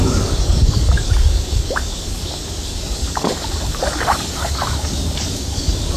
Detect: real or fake fake